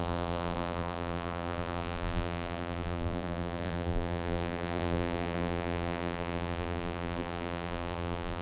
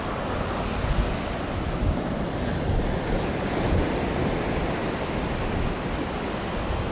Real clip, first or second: second